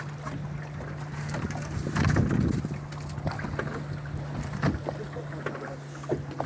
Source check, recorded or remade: recorded